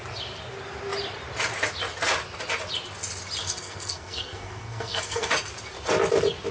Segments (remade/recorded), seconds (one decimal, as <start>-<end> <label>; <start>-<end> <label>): 0.0-3.4 recorded; 3.4-5.3 remade; 5.3-6.5 recorded